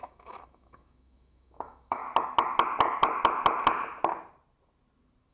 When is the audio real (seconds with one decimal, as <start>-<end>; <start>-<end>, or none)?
2.0-5.3